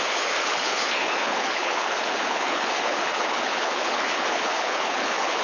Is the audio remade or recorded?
remade